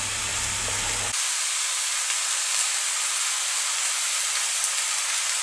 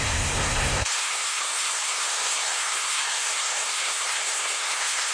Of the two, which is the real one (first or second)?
first